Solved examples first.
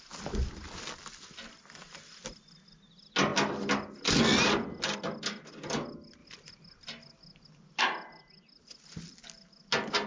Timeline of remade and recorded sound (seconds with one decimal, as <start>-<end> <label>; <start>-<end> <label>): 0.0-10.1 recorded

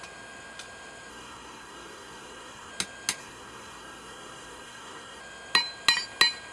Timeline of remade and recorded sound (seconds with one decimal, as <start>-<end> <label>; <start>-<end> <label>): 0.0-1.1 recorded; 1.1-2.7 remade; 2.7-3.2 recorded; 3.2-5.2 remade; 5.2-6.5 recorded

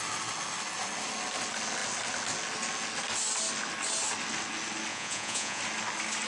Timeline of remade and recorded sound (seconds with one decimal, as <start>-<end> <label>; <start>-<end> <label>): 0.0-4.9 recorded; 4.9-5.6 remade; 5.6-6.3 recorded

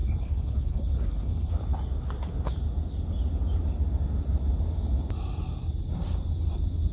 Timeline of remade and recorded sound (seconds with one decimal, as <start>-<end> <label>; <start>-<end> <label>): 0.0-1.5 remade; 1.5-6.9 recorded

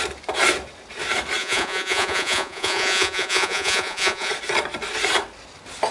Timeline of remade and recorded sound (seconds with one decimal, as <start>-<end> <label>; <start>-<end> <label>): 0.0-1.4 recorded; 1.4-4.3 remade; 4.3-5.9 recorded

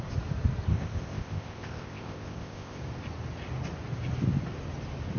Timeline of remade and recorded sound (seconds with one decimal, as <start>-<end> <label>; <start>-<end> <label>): 0.0-0.7 recorded; 0.7-2.8 remade; 2.8-5.2 recorded

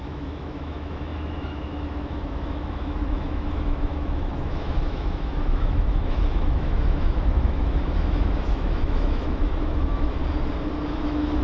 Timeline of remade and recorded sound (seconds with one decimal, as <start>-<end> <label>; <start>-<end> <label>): 0.0-10.2 remade; 10.2-10.9 recorded; 10.9-11.4 remade